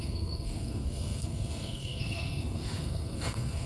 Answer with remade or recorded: remade